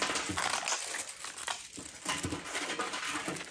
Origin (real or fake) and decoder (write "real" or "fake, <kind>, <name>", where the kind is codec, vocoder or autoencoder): real